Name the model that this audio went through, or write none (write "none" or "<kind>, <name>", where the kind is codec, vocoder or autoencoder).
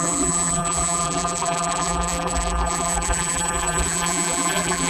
vocoder, BigVGAN v2